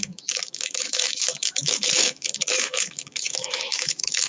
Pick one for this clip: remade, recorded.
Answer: remade